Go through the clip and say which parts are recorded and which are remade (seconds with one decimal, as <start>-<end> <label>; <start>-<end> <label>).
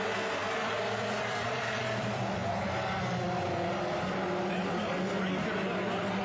0.0-2.4 remade; 2.4-6.2 recorded